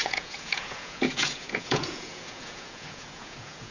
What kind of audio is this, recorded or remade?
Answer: remade